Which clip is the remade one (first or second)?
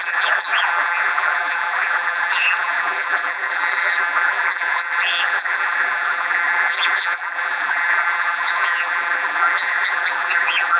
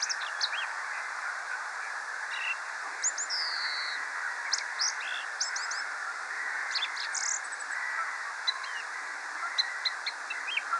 first